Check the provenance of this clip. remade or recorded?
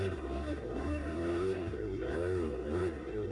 remade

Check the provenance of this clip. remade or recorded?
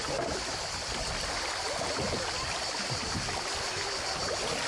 recorded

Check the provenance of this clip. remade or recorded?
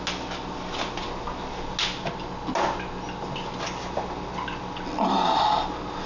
recorded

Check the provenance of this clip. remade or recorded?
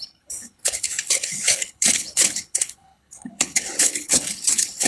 remade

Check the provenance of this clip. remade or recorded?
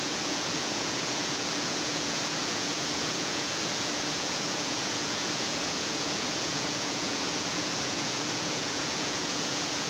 remade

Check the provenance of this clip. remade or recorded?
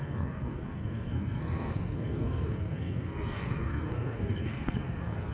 remade